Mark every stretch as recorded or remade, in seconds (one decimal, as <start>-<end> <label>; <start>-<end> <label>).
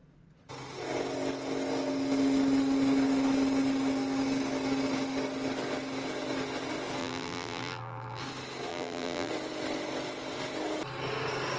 0.0-7.0 recorded; 7.0-8.2 remade; 8.2-8.7 recorded; 8.7-9.3 remade; 9.3-11.6 recorded